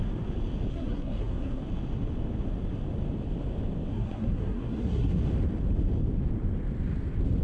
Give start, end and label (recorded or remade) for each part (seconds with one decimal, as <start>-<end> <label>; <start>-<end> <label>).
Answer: 0.0-0.7 recorded; 0.7-1.6 remade; 1.6-3.9 recorded; 3.9-5.2 remade; 5.2-7.4 recorded